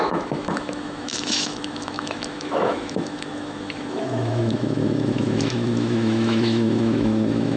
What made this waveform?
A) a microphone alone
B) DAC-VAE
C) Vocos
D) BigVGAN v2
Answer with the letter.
B